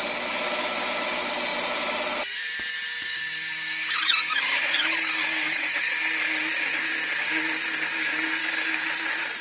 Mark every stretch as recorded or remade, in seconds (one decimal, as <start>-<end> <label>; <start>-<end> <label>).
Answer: 0.0-2.9 recorded; 2.9-5.9 remade; 5.9-8.4 recorded; 8.4-8.9 remade; 8.9-9.4 recorded